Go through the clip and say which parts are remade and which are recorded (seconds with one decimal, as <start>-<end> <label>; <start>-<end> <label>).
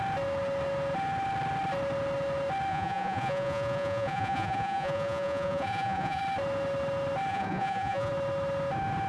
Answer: 0.0-2.7 recorded; 2.7-6.2 remade; 6.2-7.3 recorded; 7.3-8.1 remade; 8.1-9.1 recorded